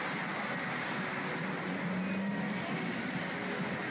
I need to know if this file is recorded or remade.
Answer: recorded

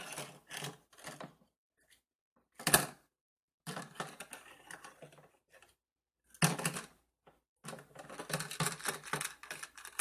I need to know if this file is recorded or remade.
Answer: recorded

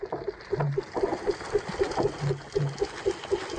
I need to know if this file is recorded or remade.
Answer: recorded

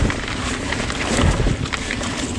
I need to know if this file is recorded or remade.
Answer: remade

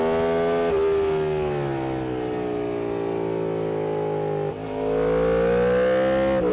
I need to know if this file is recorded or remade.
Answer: recorded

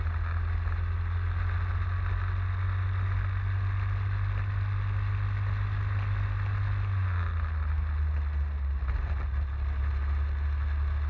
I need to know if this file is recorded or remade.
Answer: recorded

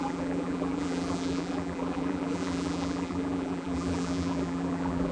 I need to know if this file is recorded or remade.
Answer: remade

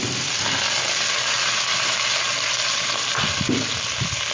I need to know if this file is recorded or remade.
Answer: remade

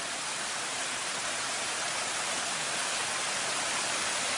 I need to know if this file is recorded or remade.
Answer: recorded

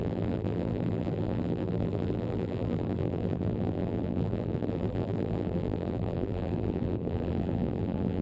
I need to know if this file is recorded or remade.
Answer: remade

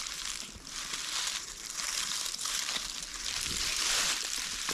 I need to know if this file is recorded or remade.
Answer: remade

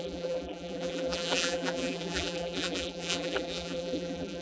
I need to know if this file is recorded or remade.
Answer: remade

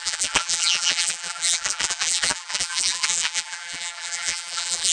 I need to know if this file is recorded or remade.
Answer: remade